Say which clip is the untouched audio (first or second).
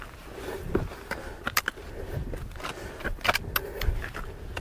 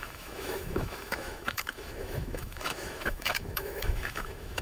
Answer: first